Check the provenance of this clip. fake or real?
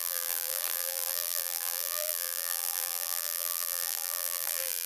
fake